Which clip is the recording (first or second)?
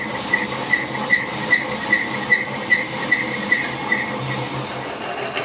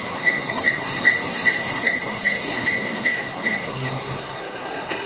first